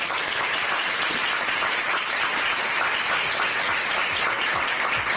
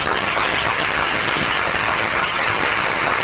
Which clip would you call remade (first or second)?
second